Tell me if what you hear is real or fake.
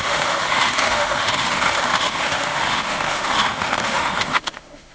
fake